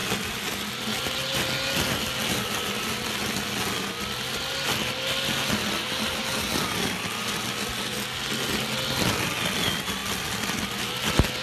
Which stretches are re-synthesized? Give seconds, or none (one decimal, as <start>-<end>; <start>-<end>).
none